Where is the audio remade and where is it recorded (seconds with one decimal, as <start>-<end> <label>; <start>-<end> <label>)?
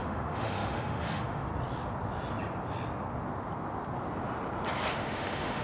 0.0-1.5 remade; 1.5-4.9 recorded; 4.9-5.6 remade